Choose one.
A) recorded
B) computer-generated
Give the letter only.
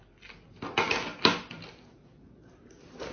A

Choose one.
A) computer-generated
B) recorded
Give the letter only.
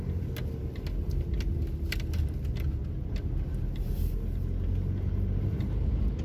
B